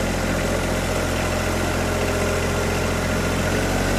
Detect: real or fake real